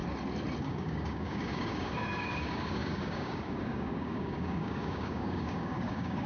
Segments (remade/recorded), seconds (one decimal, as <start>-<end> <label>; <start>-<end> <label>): 0.0-0.6 recorded; 0.6-6.3 remade